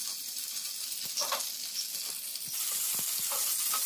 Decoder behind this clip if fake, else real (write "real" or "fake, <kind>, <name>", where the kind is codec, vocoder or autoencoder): real